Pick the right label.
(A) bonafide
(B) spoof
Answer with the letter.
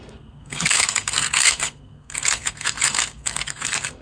B